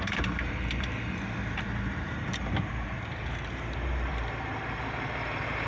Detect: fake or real fake